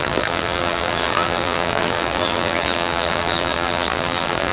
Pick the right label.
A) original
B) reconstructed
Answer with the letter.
B